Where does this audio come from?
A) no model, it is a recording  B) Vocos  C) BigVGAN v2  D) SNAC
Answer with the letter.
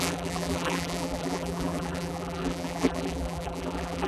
C